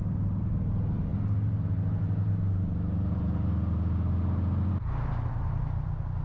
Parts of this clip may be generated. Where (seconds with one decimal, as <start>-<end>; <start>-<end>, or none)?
none

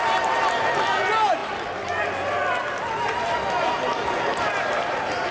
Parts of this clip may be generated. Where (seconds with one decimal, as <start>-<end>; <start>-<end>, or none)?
none

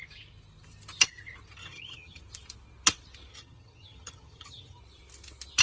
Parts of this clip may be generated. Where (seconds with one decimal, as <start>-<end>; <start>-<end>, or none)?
1.6-2.2; 3.3-4.8